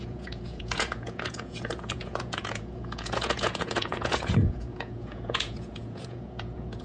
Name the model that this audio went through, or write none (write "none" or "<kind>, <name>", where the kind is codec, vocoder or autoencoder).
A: vocoder, Vocos